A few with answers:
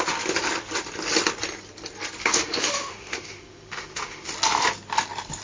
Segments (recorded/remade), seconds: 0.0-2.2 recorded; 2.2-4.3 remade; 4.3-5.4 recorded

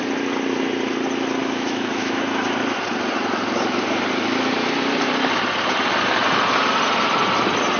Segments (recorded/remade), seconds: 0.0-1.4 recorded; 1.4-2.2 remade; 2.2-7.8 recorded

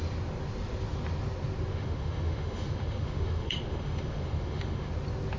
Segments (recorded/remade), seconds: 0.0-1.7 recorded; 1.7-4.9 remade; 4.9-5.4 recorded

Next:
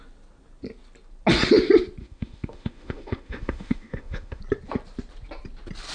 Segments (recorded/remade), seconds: 0.0-2.0 recorded; 2.0-4.4 remade; 4.4-5.9 recorded

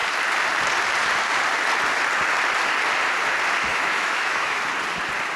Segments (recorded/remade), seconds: 0.0-3.7 recorded; 3.7-4.6 remade; 4.6-5.4 recorded